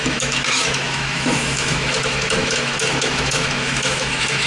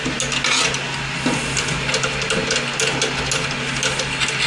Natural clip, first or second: second